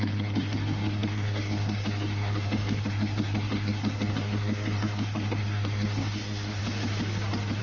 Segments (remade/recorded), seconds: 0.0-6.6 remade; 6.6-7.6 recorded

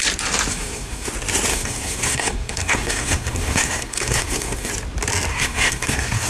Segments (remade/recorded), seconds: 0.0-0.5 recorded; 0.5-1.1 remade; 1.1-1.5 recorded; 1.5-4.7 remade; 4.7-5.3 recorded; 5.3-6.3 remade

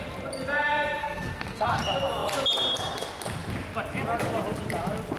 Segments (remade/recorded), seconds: 0.0-1.0 recorded; 1.0-1.8 remade; 1.8-5.2 recorded